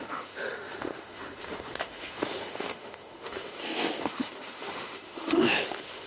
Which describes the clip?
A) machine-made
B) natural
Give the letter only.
A